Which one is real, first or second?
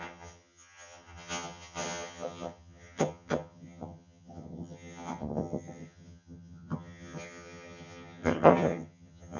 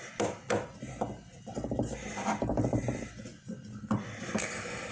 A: second